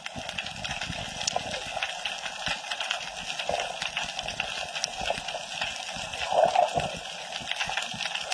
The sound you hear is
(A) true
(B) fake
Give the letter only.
A